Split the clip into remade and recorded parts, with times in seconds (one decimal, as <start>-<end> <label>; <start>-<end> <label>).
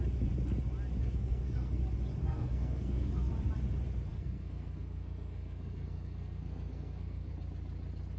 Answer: 0.0-1.0 recorded; 1.0-1.8 remade; 1.8-2.2 recorded; 2.2-3.3 remade; 3.3-4.1 recorded; 4.1-7.3 remade; 7.3-8.2 recorded